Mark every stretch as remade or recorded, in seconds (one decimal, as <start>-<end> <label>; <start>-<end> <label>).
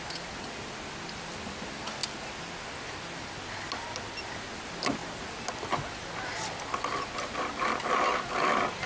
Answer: 0.0-8.9 recorded